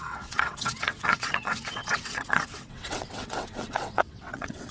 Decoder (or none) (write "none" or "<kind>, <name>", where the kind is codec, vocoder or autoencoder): vocoder, WaveNeXt